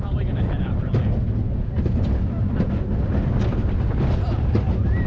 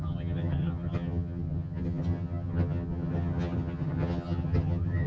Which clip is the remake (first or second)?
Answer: second